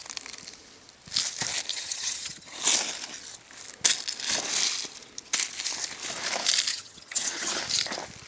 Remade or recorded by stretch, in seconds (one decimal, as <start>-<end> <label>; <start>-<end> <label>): 0.0-1.7 recorded; 1.7-2.6 remade; 2.6-6.7 recorded; 6.7-7.6 remade; 7.6-8.3 recorded